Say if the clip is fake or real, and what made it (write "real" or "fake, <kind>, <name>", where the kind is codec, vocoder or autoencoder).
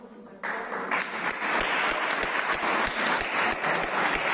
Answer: real